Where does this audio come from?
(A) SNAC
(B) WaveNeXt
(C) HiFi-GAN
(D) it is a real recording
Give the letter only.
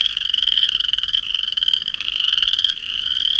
A